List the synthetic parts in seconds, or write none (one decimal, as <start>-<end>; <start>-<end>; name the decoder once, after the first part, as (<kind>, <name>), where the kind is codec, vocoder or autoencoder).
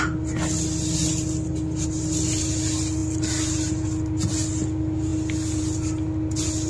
none